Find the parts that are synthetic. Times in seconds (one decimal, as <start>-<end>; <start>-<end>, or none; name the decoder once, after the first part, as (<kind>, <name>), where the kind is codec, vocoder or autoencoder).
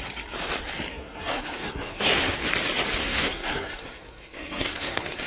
0.9-2.4 (codec, SNAC); 3.0-5.3